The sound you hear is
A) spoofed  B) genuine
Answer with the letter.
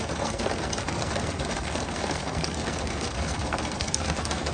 A